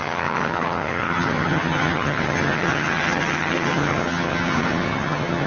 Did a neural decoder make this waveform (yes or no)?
yes